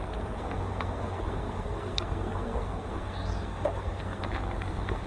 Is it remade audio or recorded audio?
remade